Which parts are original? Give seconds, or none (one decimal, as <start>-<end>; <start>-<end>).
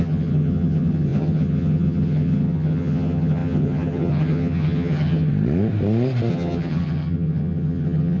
5.3-6.3